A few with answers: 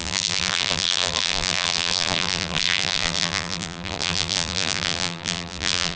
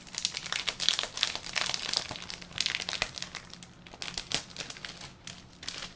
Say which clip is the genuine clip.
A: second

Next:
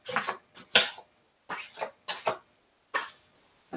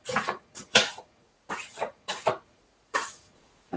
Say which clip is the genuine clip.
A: first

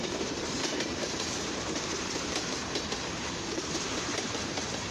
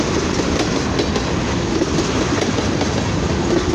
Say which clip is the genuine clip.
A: second